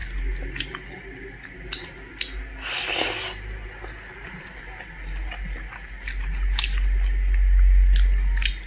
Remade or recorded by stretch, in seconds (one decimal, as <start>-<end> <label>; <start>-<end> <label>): 0.0-8.7 recorded